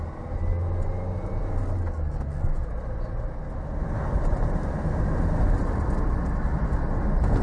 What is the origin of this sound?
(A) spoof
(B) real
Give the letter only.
B